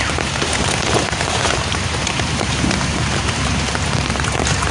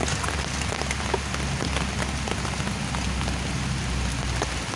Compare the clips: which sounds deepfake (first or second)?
first